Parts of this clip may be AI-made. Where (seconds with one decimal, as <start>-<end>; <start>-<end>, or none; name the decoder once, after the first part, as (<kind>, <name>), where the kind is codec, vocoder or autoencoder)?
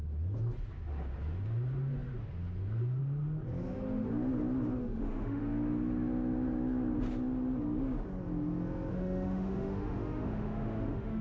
4.8-5.4 (autoencoder, DAC-VAE); 8.9-11.2